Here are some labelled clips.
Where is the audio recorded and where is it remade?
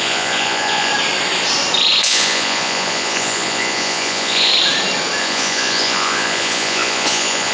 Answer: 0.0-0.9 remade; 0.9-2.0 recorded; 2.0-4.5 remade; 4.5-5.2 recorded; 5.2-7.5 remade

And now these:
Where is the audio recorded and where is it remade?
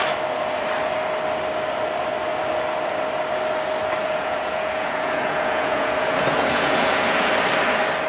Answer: 0.0-4.0 recorded; 4.0-7.3 remade; 7.3-8.1 recorded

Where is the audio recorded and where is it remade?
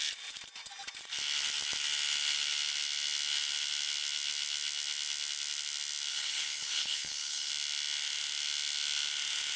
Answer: 0.0-6.1 recorded; 6.1-7.5 remade; 7.5-9.6 recorded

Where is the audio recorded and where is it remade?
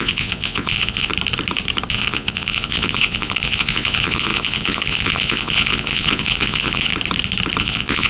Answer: 0.0-1.1 remade; 1.1-1.9 recorded; 1.9-6.9 remade; 6.9-7.6 recorded; 7.6-8.1 remade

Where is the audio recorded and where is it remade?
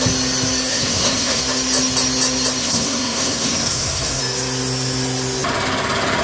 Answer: 0.0-0.7 recorded; 0.7-1.4 remade; 1.4-2.6 recorded; 2.6-4.2 remade; 4.2-6.2 recorded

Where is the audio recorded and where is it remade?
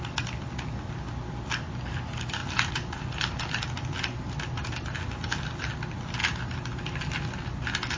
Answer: 0.0-2.4 recorded; 2.4-3.0 remade; 3.0-8.0 recorded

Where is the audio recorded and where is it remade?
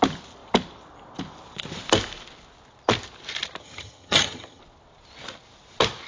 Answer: 0.0-3.6 recorded; 3.6-4.6 remade; 4.6-6.1 recorded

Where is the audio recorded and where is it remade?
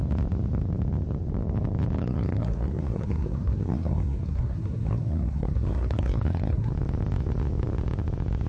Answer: 0.0-2.0 recorded; 2.0-6.7 remade; 6.7-8.5 recorded